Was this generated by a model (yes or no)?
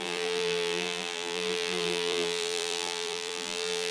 yes